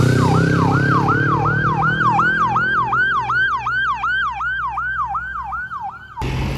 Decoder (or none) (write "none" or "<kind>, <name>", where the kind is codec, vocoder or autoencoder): none